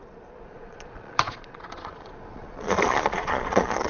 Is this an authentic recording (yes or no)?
no